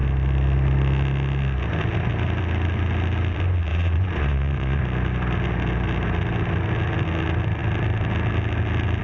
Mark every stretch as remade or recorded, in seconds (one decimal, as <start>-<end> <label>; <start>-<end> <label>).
0.0-3.7 recorded; 3.7-4.8 remade; 4.8-9.0 recorded